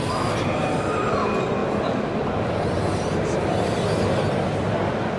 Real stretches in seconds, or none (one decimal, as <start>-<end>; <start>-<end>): 0.0-5.2